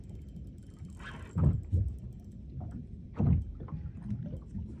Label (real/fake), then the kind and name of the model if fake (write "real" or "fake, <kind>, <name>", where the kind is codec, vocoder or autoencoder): real